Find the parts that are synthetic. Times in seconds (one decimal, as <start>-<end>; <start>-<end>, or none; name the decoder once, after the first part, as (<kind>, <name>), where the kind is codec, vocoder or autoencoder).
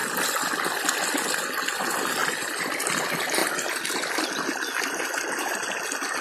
2.2-2.8 (vocoder, BigVGAN v2); 3.4-4.1